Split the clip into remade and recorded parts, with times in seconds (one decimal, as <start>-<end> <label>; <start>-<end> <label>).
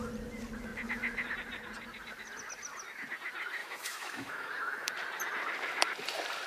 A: 0.0-3.6 recorded; 3.6-4.9 remade; 4.9-6.5 recorded